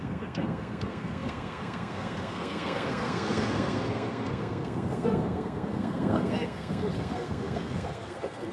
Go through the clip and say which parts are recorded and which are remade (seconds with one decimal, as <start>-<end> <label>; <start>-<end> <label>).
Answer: 0.0-8.5 remade